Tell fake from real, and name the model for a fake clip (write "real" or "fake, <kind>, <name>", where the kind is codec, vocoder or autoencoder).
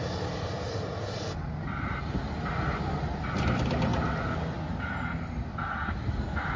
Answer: real